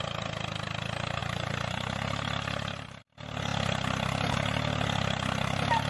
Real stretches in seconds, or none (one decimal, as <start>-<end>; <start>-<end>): 0.0-1.2; 3.0-5.9